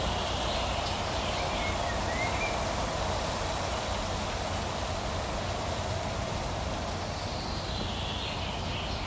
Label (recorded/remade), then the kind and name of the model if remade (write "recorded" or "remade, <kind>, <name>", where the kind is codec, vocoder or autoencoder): recorded